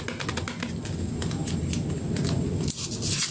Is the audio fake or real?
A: real